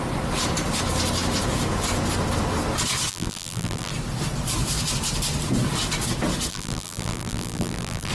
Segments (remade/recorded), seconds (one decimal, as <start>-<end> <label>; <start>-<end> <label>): 0.0-3.1 recorded; 3.1-3.9 remade; 3.9-6.5 recorded; 6.5-8.1 remade